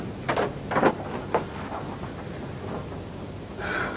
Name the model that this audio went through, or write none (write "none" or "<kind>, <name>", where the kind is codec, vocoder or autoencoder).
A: none